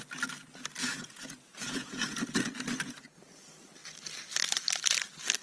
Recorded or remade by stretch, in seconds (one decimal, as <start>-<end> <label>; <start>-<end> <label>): 0.0-0.8 recorded; 0.8-2.3 remade; 2.3-5.4 recorded